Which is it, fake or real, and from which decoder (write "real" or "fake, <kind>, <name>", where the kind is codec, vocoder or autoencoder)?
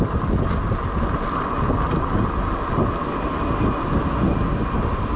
real